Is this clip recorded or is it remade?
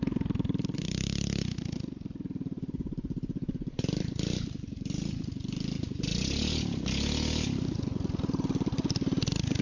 recorded